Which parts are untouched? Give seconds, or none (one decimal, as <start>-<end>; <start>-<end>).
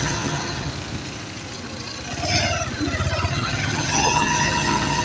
0.7-3.3